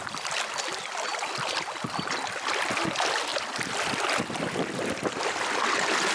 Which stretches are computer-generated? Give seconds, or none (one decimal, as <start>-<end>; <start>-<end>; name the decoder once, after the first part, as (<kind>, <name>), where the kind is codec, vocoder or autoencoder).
none